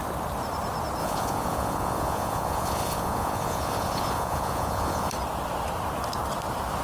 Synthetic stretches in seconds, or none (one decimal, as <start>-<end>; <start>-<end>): 1.0-5.1